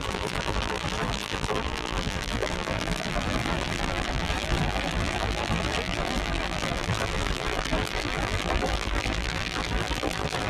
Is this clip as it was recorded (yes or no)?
no